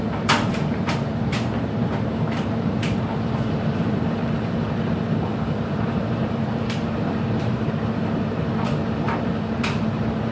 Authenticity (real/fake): fake